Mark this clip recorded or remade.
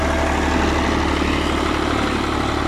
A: recorded